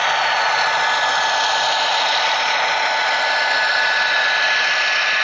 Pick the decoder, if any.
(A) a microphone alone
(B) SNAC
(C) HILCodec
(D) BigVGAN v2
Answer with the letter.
A